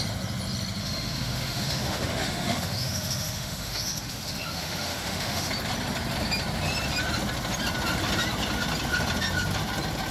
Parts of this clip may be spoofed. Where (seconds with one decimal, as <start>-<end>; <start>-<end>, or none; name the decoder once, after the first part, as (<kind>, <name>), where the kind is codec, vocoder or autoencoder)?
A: 0.8-5.5 (autoencoder, DAC-VAE)